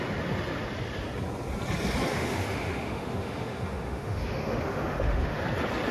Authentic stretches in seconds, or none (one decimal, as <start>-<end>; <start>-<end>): 0.0-2.1; 5.4-5.9